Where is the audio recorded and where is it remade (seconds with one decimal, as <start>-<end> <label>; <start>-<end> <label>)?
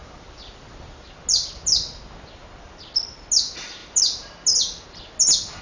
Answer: 0.0-5.6 recorded